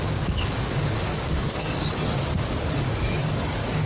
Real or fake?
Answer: fake